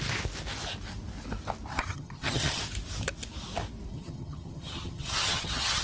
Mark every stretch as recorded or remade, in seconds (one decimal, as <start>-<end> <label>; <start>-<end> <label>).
0.0-1.7 recorded; 1.7-2.6 remade; 2.6-3.9 recorded; 3.9-5.8 remade